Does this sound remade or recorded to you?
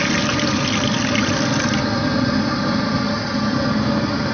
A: recorded